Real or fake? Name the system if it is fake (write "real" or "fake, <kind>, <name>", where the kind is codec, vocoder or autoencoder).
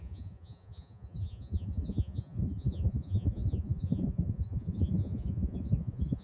fake, vocoder, Vocos